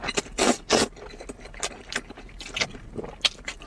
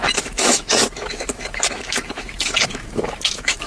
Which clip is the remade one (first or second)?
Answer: second